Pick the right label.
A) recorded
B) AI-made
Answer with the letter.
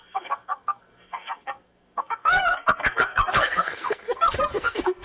B